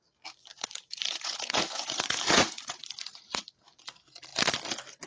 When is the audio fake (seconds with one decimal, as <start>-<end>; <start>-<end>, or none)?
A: 0.5-3.4